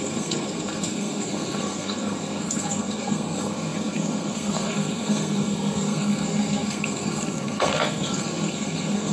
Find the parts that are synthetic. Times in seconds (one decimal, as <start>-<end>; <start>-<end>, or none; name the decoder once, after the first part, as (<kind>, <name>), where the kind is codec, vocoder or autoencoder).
0.0-9.1 (codec, SNAC)